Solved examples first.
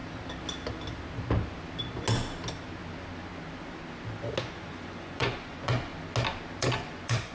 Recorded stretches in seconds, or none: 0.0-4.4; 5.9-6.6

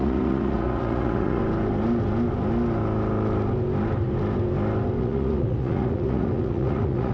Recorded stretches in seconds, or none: 1.4-5.0

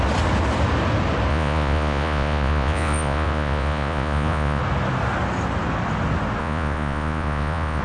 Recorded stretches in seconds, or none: 0.0-1.3; 4.6-6.4

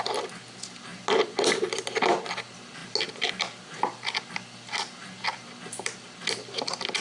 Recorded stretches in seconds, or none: 0.0-7.0

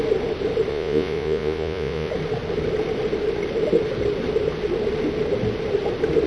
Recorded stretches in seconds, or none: 0.0-0.7; 2.1-6.3

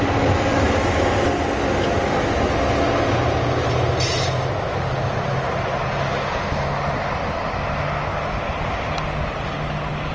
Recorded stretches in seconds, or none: 0.0-10.1